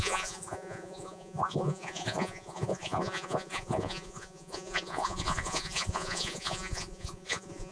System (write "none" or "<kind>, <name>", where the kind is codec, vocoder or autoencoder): vocoder, Vocos